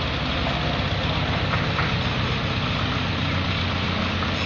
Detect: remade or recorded recorded